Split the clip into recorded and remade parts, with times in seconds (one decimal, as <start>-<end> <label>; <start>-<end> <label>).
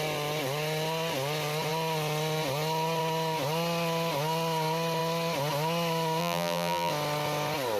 0.0-6.2 recorded; 6.2-6.9 remade; 6.9-7.8 recorded